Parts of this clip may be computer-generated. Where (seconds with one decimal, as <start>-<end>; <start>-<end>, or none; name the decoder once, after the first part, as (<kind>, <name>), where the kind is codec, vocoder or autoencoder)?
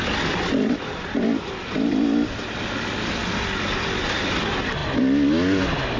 none